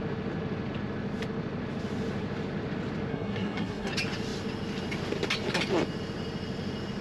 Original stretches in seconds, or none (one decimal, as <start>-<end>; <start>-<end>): 0.0-3.1; 3.9-7.0